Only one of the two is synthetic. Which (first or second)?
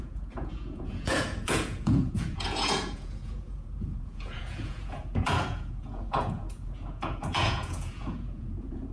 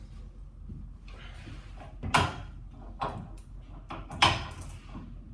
first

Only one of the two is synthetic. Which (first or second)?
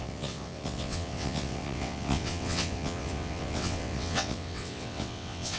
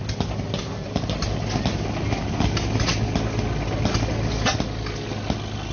first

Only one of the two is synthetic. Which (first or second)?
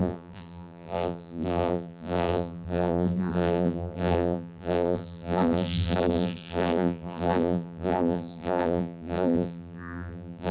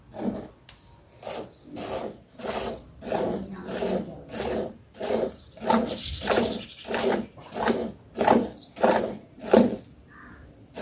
first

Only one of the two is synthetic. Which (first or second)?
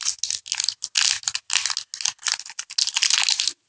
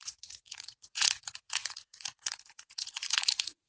second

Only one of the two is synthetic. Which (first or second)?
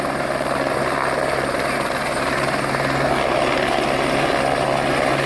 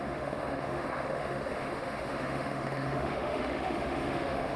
second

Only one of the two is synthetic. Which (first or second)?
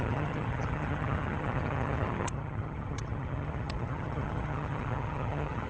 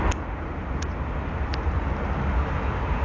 first